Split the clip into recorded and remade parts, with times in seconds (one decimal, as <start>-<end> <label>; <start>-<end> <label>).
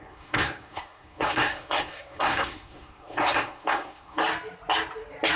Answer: 0.0-4.2 remade; 4.2-5.4 recorded